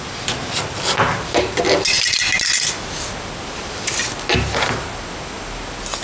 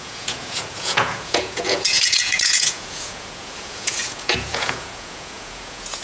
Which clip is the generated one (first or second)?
second